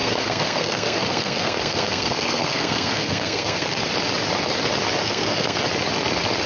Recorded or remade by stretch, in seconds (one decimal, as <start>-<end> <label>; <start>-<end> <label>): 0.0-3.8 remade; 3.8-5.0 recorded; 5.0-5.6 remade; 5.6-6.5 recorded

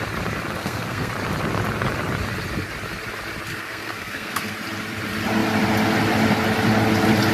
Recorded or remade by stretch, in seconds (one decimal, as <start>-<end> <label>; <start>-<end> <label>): 0.0-0.6 recorded; 0.6-1.1 remade; 1.1-3.5 recorded; 3.5-4.5 remade; 4.5-7.3 recorded

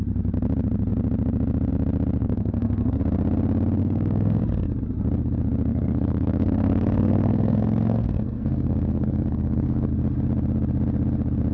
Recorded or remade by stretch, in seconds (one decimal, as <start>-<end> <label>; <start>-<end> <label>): 0.0-2.2 recorded; 2.2-3.0 remade; 3.0-3.8 recorded; 3.8-4.4 remade; 4.4-5.7 recorded; 5.7-9.9 remade; 9.9-11.5 recorded